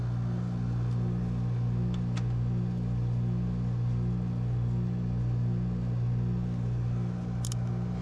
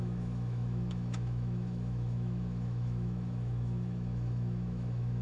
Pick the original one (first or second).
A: first